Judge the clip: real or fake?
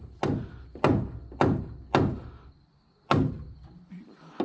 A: real